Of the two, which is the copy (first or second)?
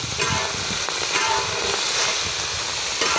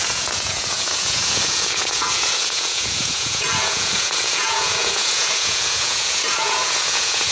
second